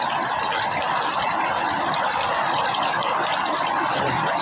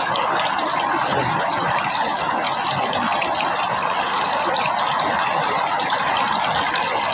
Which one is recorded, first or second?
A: second